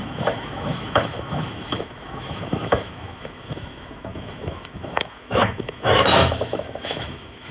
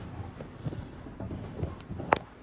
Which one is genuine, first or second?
second